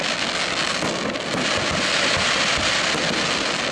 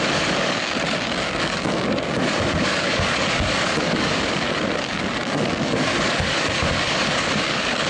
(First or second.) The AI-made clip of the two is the second